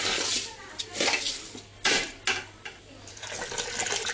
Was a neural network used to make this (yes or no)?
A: no